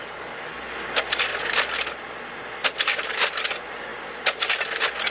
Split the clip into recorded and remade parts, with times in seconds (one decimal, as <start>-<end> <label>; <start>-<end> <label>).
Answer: 0.0-0.5 remade; 0.5-5.1 recorded